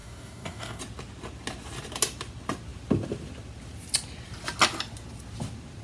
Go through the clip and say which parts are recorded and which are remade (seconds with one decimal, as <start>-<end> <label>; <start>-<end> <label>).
0.0-0.8 remade; 0.8-5.8 recorded